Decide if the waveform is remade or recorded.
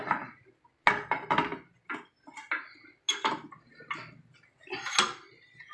recorded